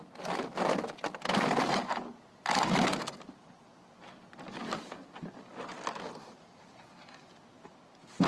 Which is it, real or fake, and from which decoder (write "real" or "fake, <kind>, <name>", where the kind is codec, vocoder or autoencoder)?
real